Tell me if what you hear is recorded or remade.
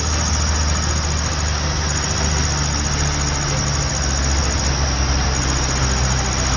recorded